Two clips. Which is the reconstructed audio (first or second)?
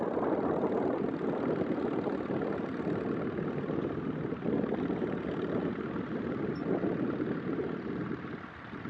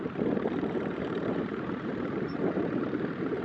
second